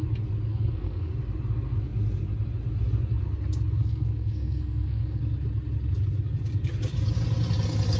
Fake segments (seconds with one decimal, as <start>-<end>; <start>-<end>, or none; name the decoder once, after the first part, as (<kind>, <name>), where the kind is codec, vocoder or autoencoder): 0.5-1.1 (codec, SNAC); 3.8-5.2